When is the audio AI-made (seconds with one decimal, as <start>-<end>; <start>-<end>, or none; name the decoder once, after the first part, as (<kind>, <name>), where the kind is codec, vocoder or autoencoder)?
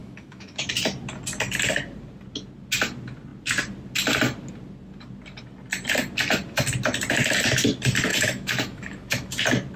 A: 0.0-0.7 (autoencoder, DAC-VAE); 8.1-9.3